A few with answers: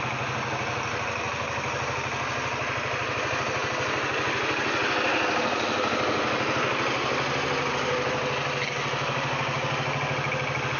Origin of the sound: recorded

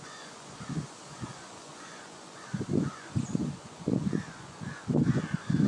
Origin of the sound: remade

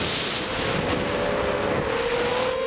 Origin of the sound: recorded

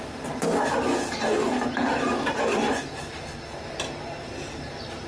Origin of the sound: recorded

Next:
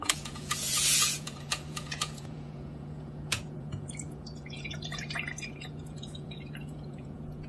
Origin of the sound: remade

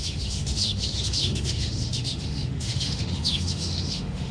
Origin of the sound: remade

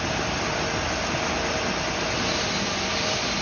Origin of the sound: recorded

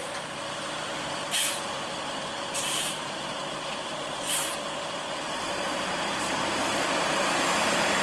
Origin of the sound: remade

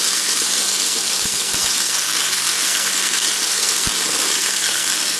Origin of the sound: remade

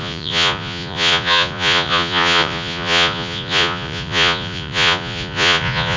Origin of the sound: remade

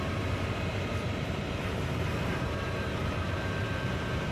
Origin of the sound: remade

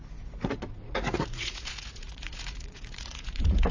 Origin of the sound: remade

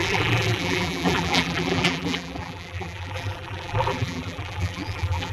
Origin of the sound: remade